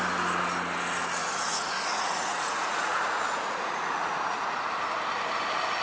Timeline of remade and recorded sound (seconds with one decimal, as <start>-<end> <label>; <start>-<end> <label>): 0.0-1.2 recorded; 1.2-4.7 remade; 4.7-5.8 recorded